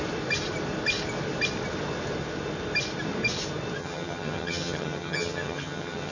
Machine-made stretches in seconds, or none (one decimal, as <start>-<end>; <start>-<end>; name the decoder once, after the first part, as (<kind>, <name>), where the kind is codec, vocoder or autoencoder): 3.8-6.1 (vocoder, HiFi-GAN)